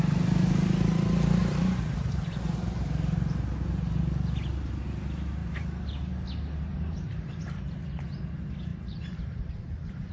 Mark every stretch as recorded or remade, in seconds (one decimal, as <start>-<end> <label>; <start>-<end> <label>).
0.0-1.4 recorded; 1.4-4.0 remade; 4.0-5.4 recorded; 5.4-6.1 remade; 6.1-6.7 recorded; 6.7-7.4 remade; 7.4-8.7 recorded; 8.7-9.6 remade; 9.6-10.1 recorded